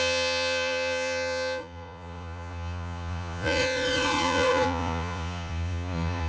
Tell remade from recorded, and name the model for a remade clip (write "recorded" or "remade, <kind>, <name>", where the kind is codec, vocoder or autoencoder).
remade, vocoder, Vocos